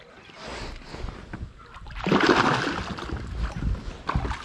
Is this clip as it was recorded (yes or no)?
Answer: yes